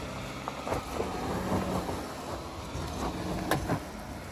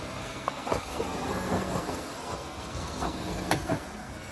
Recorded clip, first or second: first